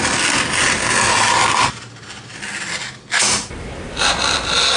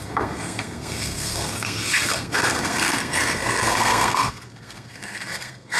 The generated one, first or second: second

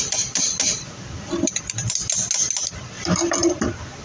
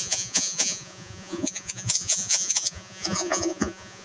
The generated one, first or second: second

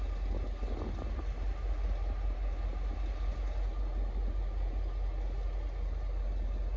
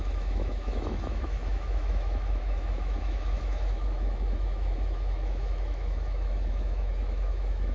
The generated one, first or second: second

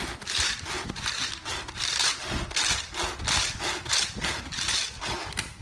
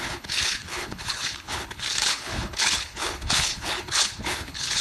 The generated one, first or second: second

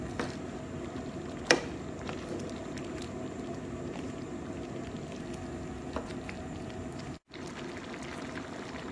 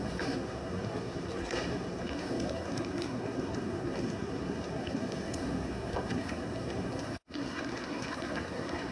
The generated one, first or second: second